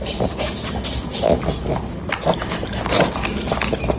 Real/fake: real